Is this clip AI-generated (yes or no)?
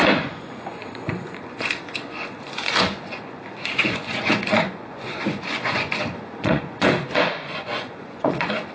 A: yes